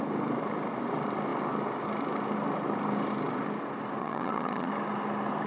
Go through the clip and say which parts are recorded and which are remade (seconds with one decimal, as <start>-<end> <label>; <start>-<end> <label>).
0.0-4.0 recorded; 4.0-4.7 remade; 4.7-5.5 recorded